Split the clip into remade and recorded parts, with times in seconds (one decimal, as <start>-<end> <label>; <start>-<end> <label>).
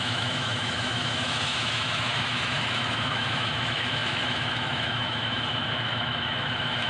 0.0-6.9 remade